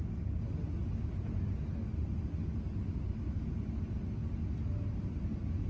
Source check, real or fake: real